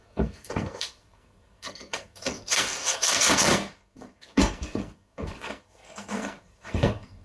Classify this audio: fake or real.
fake